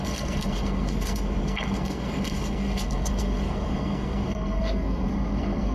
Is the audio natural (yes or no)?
no